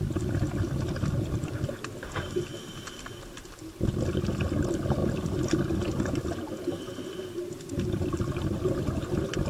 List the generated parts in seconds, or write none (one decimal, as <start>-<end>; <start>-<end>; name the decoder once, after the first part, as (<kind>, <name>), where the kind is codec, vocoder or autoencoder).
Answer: none

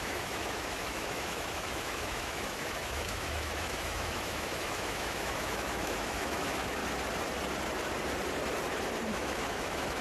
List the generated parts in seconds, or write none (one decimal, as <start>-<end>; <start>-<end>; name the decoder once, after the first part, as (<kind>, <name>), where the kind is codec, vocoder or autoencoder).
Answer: 0.0-6.8 (autoencoder, DAC-VAE); 9.1-10.0

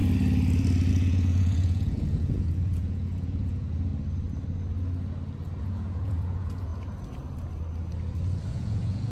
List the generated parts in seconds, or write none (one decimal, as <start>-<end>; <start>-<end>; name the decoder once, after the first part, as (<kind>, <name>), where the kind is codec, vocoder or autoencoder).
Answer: 0.9-3.9 (vocoder, Vocos); 5.6-6.7; 8.5-9.1

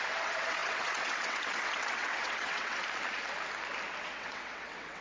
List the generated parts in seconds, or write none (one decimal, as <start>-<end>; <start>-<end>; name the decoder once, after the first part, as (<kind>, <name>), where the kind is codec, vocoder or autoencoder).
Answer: 0.0-2.8 (vocoder, WaveNeXt); 4.0-5.0

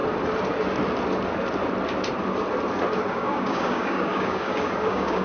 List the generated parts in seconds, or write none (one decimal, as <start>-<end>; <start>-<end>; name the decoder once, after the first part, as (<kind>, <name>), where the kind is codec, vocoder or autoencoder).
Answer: 3.1-5.2 (codec, DAC)

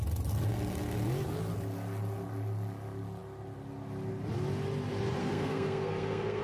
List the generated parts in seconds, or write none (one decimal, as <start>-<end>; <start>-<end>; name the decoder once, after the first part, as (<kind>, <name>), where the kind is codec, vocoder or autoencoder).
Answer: 5.2-6.4 (codec, SNAC)

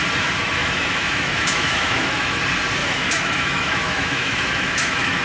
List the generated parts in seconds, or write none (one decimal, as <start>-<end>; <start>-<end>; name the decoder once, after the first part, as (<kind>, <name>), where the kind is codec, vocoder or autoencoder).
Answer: 0.6-2.4 (autoencoder, DAC-VAE); 2.8-5.2

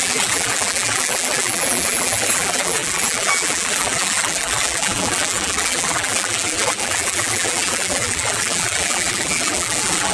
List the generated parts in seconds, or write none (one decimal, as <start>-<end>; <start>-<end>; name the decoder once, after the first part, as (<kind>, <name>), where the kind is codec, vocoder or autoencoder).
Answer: 0.0-10.1 (vocoder, BigVGAN v2)